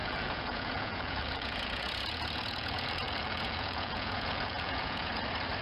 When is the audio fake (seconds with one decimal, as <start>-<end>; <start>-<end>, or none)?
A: 0.0-5.1